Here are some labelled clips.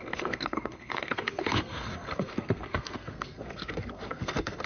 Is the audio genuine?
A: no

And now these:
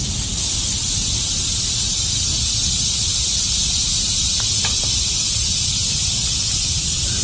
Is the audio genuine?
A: yes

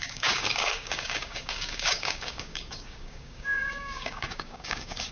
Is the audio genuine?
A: no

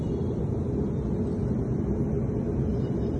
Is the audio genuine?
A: yes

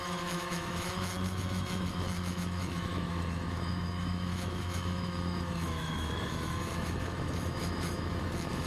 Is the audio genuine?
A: no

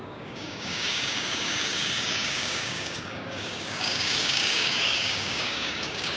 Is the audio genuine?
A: no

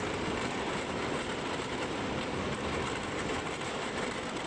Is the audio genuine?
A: no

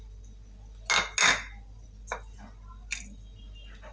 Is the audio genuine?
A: yes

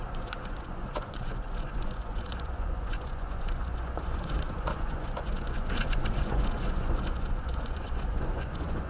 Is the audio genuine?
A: no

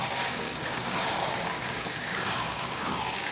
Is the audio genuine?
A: no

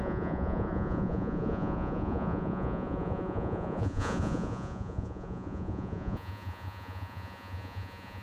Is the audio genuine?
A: no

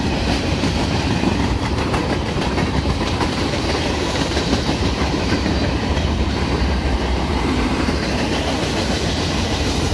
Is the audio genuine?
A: no